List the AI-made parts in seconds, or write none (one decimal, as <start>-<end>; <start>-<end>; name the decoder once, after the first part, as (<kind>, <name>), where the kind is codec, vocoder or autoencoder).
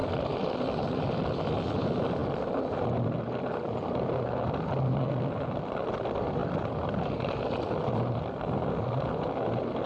none